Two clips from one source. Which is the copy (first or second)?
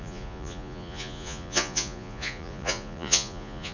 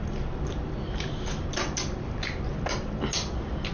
first